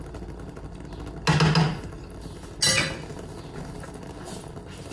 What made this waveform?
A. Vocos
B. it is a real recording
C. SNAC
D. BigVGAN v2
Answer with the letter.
B